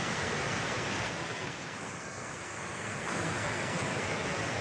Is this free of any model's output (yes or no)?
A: no